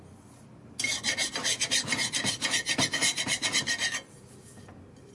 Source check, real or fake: real